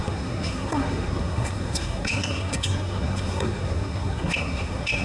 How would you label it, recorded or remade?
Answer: remade